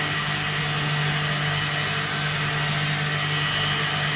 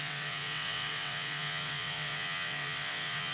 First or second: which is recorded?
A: first